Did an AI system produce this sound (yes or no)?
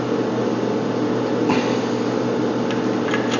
no